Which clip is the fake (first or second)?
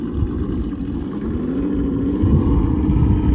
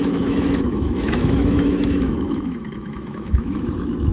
second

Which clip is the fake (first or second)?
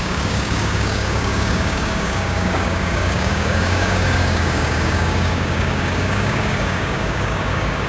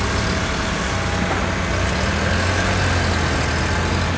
first